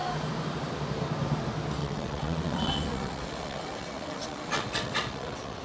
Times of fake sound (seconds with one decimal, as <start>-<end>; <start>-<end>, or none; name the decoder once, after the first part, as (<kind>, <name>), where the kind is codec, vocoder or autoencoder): 1.8-5.6 (vocoder, WaveNeXt)